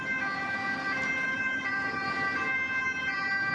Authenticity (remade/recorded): recorded